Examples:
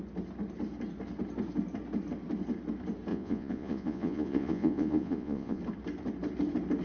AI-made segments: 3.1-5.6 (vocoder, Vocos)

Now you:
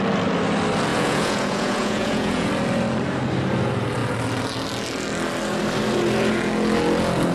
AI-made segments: 0.9-2.5 (vocoder, Vocos)

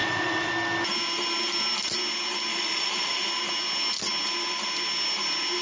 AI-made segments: 0.0-0.5 (vocoder, Vocos); 2.5-3.3

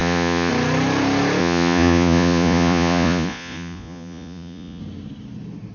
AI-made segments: 0.0-0.5 (vocoder, Vocos); 1.4-4.8

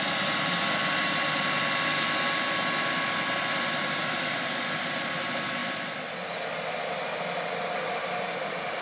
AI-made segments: none

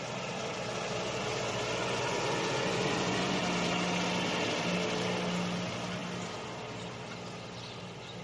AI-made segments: 1.8-3.4 (vocoder, Vocos)

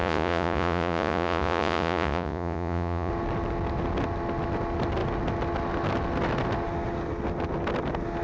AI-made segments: 0.0-3.1 (vocoder, Vocos)